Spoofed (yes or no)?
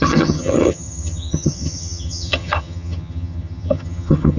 yes